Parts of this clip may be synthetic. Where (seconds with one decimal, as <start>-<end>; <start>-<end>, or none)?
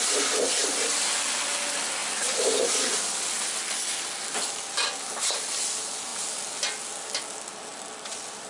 none